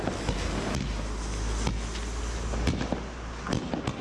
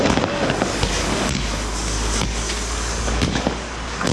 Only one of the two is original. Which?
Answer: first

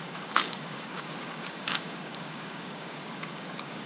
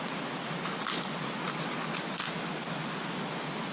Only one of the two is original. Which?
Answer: second